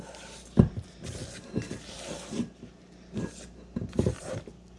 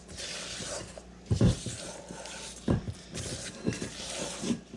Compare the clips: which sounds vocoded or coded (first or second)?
second